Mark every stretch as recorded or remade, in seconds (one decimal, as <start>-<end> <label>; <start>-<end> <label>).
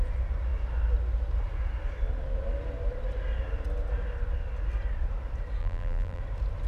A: 0.0-5.6 recorded; 5.6-6.2 remade; 6.2-6.7 recorded